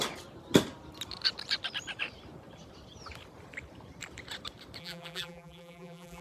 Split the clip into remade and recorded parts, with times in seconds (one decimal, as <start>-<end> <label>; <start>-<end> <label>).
0.0-4.8 recorded; 4.8-6.2 remade